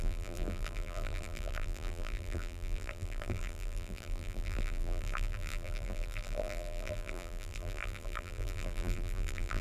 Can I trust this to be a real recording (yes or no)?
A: no